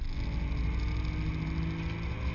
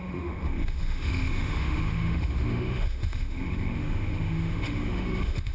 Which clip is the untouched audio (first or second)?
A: first